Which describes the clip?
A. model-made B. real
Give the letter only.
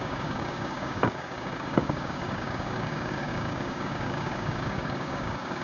A